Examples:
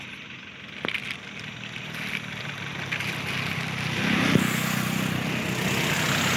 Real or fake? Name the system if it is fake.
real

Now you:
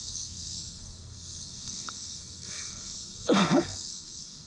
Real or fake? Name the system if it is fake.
fake, codec, SNAC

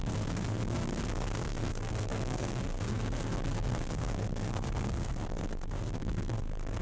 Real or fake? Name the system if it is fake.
fake, codec, SNAC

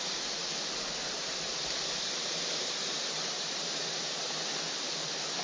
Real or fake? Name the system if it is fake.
real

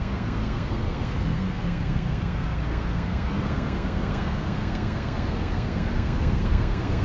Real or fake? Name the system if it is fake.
fake, codec, SNAC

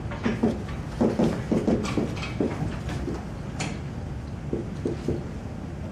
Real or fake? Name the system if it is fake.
real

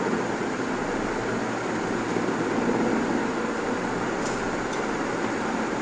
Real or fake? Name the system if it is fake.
real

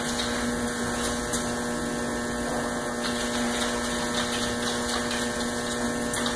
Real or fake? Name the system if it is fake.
real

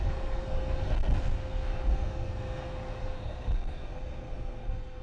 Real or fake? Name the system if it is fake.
fake, codec, SNAC